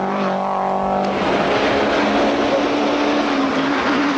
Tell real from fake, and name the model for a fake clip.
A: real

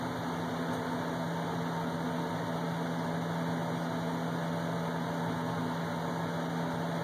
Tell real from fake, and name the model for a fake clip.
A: real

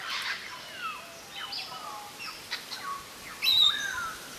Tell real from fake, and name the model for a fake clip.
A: real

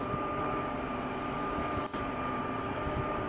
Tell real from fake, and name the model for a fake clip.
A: fake, vocoder, BigVGAN v2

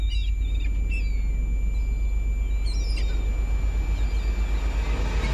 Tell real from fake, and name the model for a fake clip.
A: real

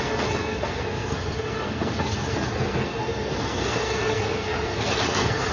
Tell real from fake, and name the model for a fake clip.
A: fake, codec, SNAC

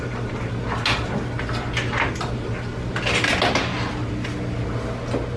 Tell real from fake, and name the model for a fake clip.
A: real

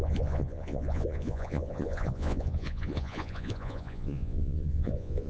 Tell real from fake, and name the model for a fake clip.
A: fake, vocoder, Vocos